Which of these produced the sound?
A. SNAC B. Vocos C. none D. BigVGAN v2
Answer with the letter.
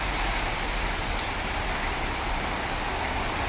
C